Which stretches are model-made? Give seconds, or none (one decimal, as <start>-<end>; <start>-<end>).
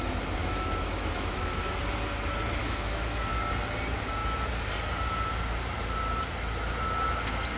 0.4-1.7; 2.6-3.3